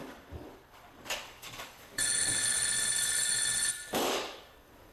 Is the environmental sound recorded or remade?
remade